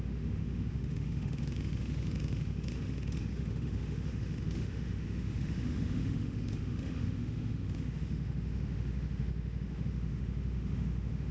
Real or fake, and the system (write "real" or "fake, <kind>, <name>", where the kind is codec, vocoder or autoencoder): fake, autoencoder, DAC-VAE